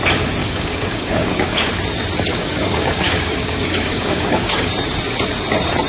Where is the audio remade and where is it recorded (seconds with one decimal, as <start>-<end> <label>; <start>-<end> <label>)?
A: 0.0-0.4 recorded; 0.4-1.7 remade; 1.7-2.3 recorded; 2.3-4.7 remade; 4.7-5.9 recorded